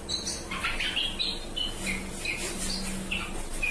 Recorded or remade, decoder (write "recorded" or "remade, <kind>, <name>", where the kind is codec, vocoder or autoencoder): recorded